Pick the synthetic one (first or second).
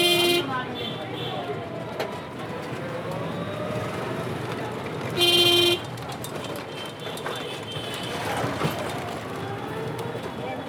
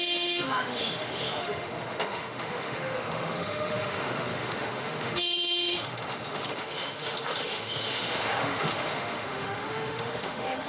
second